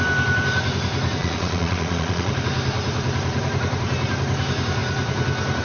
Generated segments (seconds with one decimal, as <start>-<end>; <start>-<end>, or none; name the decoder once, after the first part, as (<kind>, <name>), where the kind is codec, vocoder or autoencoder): 1.2-2.3 (vocoder, Vocos)